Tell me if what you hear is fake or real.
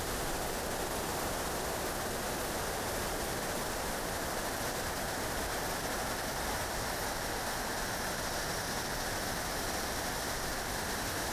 real